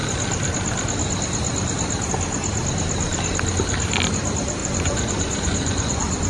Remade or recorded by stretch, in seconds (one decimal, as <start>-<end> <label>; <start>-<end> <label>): 0.0-4.6 recorded; 4.6-6.3 remade